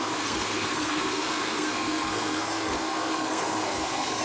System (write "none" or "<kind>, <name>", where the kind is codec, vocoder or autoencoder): codec, SNAC